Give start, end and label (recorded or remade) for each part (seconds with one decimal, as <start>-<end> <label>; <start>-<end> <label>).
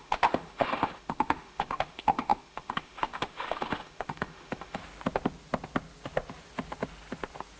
0.0-4.8 remade; 4.8-7.6 recorded